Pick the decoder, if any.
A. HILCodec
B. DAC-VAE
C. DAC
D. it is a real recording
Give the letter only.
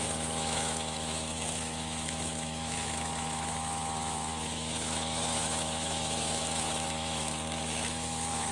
B